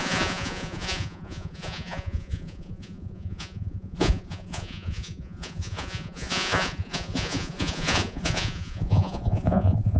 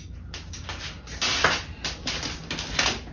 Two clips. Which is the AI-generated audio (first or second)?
first